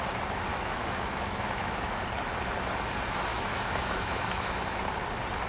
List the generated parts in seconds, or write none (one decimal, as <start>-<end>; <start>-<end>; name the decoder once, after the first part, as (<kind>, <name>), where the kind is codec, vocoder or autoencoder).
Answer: 0.5-2.0 (autoencoder, DAC-VAE); 3.3-4.8

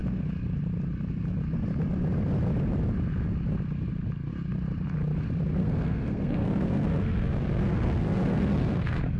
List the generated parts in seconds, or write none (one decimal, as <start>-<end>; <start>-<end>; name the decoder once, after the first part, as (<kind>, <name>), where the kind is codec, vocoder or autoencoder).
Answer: 5.6-9.2 (codec, SNAC)